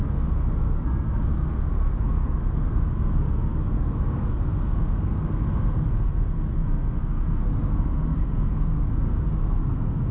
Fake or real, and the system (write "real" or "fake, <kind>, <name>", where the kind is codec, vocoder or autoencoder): fake, codec, SNAC